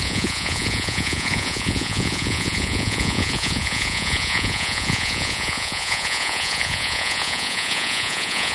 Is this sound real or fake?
fake